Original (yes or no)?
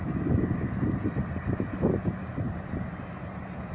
yes